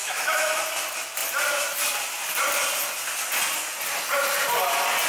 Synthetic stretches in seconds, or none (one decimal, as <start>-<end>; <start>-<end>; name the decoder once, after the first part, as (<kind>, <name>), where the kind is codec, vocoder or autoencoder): 0.0-0.6 (autoencoder, DAC-VAE)